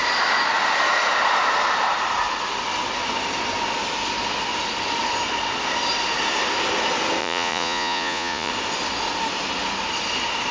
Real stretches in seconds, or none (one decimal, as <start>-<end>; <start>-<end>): 0.0-7.2; 8.5-10.5